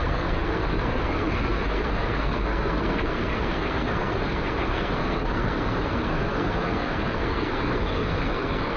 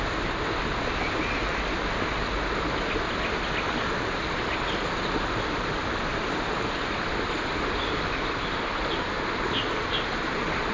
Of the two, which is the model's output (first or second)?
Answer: first